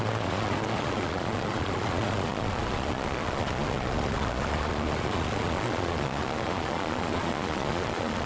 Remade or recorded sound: remade